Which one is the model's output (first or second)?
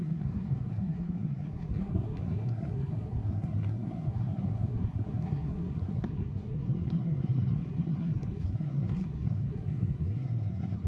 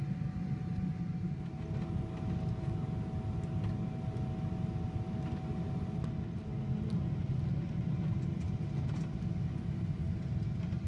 first